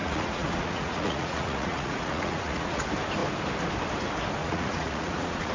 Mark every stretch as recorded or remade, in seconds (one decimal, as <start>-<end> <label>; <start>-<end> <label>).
0.0-2.8 remade; 2.8-4.4 recorded; 4.4-5.5 remade